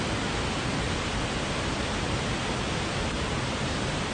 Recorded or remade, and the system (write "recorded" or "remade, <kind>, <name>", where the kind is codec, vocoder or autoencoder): recorded